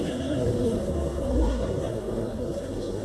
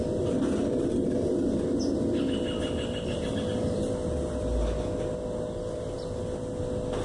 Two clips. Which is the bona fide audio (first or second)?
second